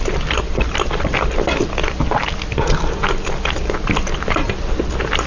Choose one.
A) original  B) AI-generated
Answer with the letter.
A